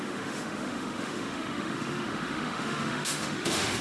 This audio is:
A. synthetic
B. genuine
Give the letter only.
A